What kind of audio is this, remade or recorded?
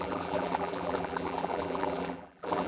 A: remade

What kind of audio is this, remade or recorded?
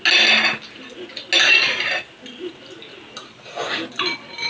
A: recorded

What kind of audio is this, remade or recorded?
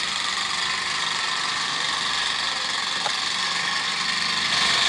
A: recorded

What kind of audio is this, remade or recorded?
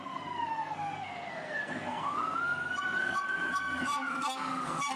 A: remade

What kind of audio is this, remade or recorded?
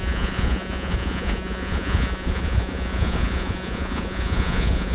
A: remade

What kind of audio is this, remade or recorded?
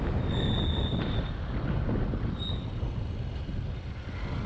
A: recorded